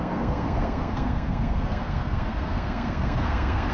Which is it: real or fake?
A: fake